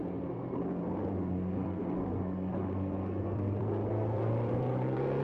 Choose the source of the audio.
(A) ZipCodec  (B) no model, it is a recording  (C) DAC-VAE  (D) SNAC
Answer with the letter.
D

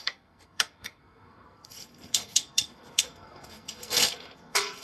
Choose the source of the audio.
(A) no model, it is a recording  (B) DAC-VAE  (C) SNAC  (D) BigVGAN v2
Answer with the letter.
C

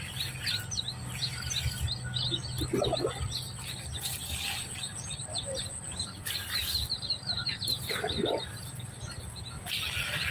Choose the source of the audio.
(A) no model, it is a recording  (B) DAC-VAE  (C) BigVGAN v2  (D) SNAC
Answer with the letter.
A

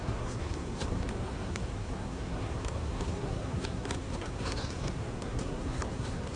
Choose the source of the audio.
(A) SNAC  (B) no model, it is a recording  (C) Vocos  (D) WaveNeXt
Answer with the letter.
A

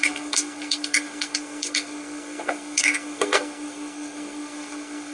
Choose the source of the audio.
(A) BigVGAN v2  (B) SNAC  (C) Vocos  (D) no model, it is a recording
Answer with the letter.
B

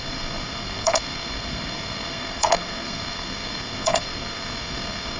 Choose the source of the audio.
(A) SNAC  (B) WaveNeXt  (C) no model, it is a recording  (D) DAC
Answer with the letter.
A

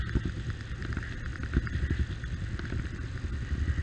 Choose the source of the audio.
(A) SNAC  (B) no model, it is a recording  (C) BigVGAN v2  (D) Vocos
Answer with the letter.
B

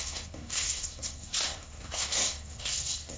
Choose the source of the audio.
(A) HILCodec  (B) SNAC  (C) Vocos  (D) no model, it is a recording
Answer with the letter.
B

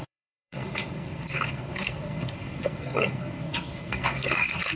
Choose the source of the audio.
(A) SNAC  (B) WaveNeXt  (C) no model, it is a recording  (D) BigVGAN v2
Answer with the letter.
A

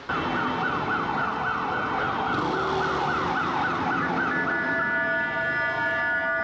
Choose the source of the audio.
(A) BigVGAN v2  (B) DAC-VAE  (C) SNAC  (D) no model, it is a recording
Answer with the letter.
D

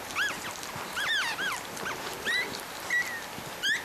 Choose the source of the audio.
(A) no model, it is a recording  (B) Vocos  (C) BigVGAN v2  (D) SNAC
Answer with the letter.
A